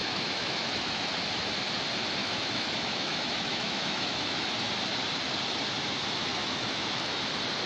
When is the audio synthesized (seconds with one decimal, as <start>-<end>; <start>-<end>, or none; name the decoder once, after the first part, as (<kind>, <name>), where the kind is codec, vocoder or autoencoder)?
0.0-1.1 (autoencoder, DAC-VAE); 2.2-4.7; 6.3-7.2